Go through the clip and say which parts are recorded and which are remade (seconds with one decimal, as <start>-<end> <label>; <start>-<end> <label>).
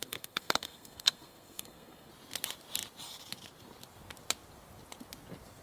0.0-2.1 remade; 2.1-5.6 recorded